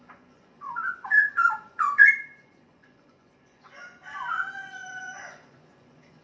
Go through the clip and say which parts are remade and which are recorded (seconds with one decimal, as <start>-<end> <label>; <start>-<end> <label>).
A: 0.0-6.2 remade